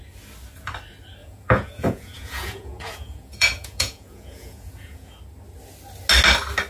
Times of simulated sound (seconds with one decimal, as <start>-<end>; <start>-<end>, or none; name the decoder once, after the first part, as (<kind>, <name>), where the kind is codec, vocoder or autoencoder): 1.2-5.2 (vocoder, Vocos)